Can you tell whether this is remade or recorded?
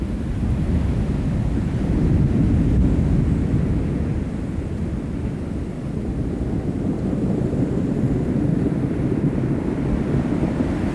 recorded